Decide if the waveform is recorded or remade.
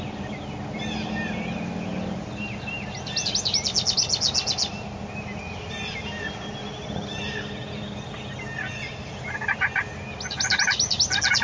recorded